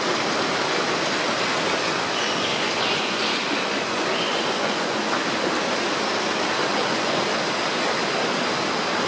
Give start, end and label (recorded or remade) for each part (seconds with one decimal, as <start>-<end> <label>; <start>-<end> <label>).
0.0-1.8 recorded; 1.8-5.0 remade; 5.0-6.7 recorded; 6.7-7.2 remade; 7.2-9.1 recorded